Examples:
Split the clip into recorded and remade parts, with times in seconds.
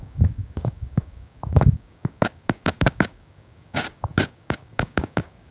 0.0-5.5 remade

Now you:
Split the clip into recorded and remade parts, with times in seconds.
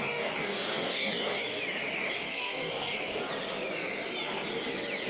0.0-1.4 remade; 1.4-2.1 recorded; 2.1-3.3 remade; 3.3-5.1 recorded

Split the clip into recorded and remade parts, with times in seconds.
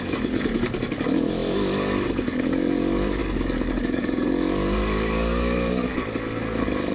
0.0-6.9 remade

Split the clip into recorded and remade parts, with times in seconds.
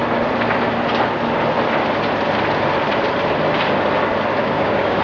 0.0-4.4 recorded; 4.4-5.0 remade